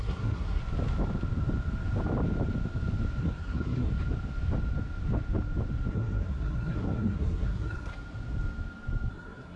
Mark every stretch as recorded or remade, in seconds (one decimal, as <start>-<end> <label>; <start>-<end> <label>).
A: 0.0-0.6 remade; 0.6-3.2 recorded; 3.2-3.9 remade; 3.9-5.9 recorded; 5.9-7.9 remade; 7.9-9.1 recorded; 9.1-9.6 remade